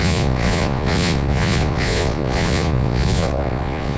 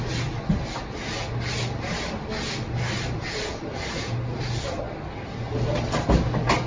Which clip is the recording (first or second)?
second